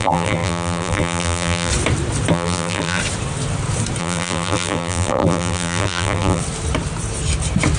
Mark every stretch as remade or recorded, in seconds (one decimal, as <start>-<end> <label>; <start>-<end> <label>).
0.0-1.7 remade; 1.7-2.3 recorded; 2.3-3.0 remade; 3.0-4.0 recorded; 4.0-6.4 remade; 6.4-7.8 recorded